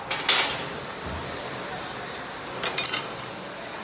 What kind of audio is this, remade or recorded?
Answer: recorded